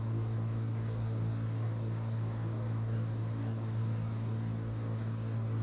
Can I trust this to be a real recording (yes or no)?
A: no